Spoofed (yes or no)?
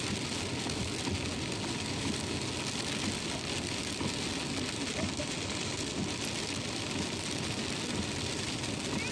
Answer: no